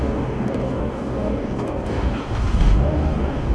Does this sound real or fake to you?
fake